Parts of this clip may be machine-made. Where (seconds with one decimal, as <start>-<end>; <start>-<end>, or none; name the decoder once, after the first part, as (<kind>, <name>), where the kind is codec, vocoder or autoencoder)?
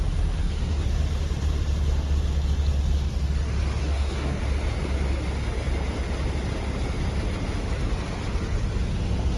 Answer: 0.4-0.9 (codec, SNAC); 3.8-4.4